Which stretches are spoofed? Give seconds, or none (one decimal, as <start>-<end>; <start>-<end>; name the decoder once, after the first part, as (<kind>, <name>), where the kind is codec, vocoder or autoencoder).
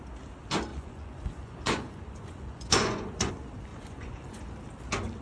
0.7-3.3 (vocoder, Vocos); 3.7-4.5